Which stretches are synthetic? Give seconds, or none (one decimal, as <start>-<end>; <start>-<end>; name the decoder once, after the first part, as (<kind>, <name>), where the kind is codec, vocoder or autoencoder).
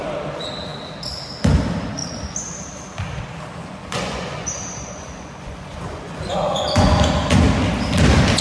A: 3.6-7.4 (vocoder, Vocos)